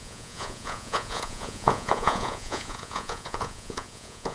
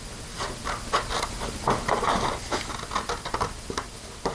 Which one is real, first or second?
second